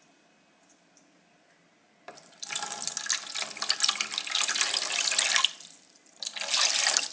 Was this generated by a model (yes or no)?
no